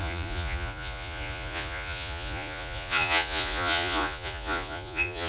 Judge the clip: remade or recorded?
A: remade